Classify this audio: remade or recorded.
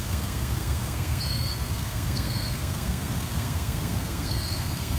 remade